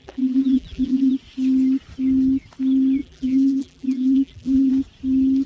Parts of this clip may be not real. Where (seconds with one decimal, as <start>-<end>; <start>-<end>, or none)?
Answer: 0.0-1.1; 3.0-4.7